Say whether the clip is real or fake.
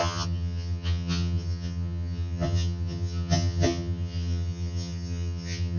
fake